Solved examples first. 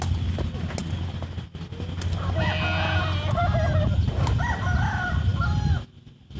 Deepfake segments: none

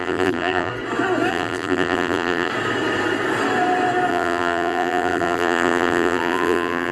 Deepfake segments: 0.0-0.7 (vocoder, BigVGAN v2); 1.3-2.5; 4.1-6.9

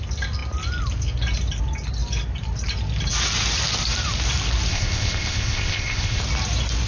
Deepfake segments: 4.7-6.2 (codec, ZipCodec)

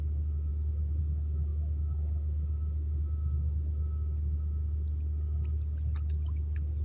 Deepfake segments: none

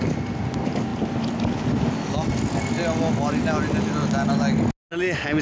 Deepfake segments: none